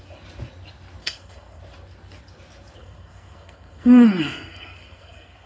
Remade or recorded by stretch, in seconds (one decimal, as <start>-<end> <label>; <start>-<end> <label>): 0.0-1.0 recorded; 1.0-1.6 remade; 1.6-2.8 recorded; 2.8-5.5 remade